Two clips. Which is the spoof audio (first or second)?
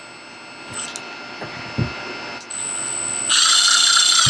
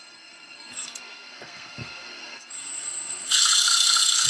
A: second